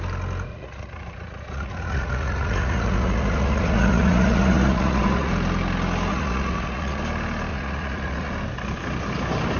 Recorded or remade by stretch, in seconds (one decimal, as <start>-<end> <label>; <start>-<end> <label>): 0.0-0.5 recorded; 0.5-5.3 remade; 5.3-6.1 recorded; 6.1-7.0 remade; 7.0-7.5 recorded; 7.5-8.3 remade; 8.3-9.6 recorded